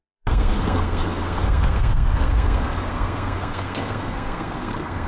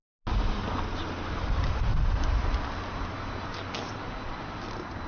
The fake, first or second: first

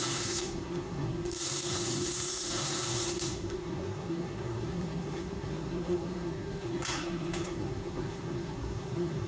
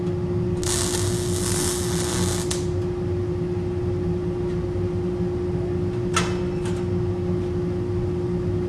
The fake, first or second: first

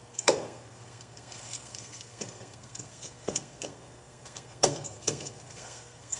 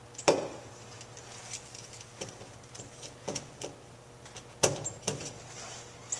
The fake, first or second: first